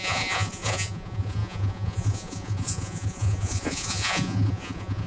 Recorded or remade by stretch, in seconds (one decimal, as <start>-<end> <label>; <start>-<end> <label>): 0.0-5.1 remade